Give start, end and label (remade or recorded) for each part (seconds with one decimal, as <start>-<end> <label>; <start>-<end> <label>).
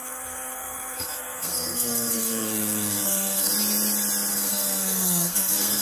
0.0-3.5 remade; 3.5-4.3 recorded; 4.3-5.8 remade